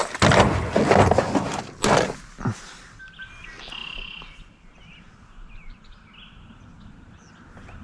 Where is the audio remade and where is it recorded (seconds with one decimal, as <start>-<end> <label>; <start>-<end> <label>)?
0.0-3.8 recorded; 3.8-4.5 remade; 4.5-7.8 recorded